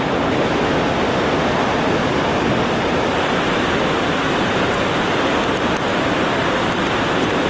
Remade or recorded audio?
recorded